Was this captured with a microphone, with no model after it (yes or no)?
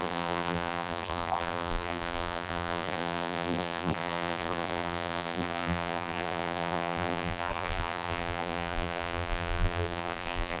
no